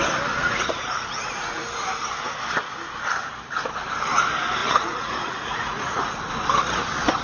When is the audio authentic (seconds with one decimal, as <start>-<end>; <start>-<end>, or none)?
0.0-0.4; 1.6-4.6; 6.3-7.2

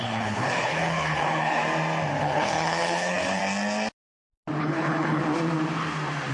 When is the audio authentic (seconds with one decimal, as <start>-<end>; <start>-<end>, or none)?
1.6-2.2; 3.4-4.6; 5.2-6.3

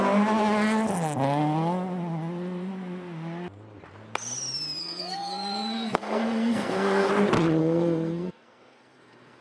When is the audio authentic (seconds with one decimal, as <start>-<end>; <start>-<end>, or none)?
0.0-4.8; 7.1-7.6

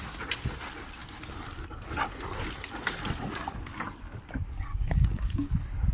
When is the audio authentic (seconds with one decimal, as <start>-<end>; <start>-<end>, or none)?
0.0-4.7; 5.5-5.9